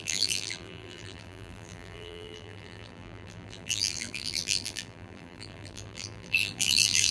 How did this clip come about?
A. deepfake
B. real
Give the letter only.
A